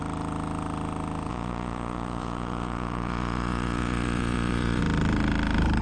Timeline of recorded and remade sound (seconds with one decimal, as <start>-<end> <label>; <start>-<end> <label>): 0.0-1.3 recorded; 1.3-4.8 remade; 4.8-5.8 recorded